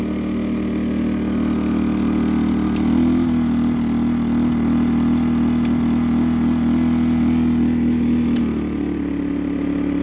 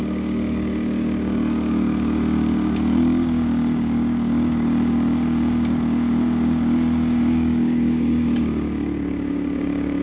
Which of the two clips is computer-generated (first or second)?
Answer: second